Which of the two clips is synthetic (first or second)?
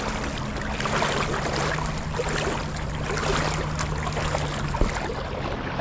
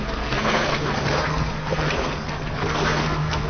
second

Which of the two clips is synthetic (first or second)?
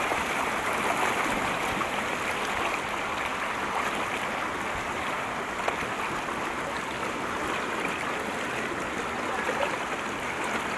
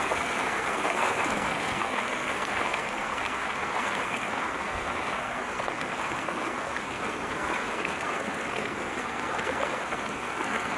second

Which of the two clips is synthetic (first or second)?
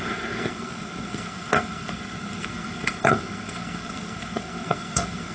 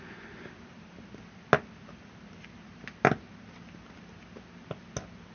first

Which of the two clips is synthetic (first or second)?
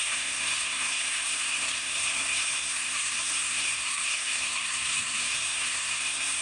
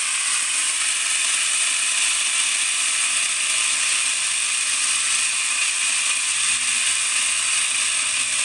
first